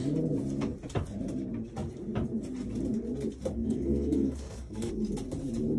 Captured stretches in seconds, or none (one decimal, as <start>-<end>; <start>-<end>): 0.0-3.6; 4.9-5.8